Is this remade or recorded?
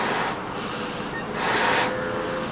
recorded